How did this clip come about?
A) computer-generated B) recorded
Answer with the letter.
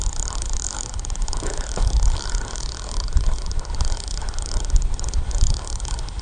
A